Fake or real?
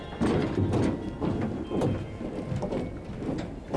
real